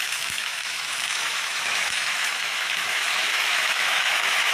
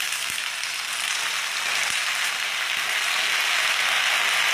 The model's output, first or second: first